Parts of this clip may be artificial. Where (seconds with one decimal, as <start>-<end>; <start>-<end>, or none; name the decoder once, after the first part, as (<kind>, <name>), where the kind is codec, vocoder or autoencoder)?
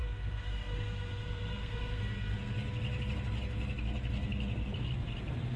0.0-2.0 (codec, SNAC)